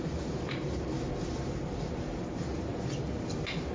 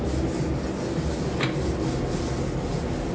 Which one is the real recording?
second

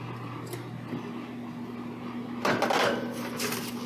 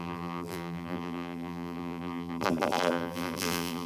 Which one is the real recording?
first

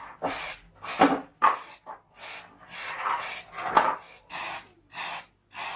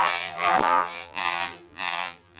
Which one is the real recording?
first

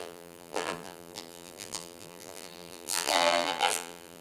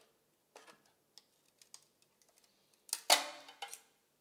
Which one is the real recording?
second